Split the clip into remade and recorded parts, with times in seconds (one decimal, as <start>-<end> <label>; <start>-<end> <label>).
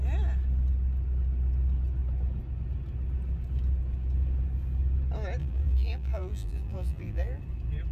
0.0-5.4 recorded; 5.4-7.4 remade; 7.4-7.9 recorded